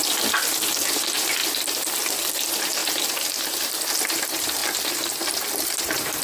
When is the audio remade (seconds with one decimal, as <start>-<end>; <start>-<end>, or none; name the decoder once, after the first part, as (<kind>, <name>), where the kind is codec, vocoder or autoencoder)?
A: 0.9-1.4 (vocoder, BigVGAN v2); 2.3-6.2